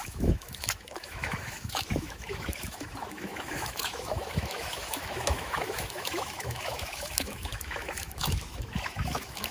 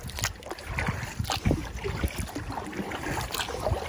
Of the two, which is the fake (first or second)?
first